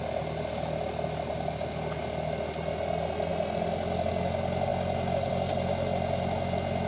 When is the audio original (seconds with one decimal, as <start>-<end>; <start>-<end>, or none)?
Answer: 0.0-6.9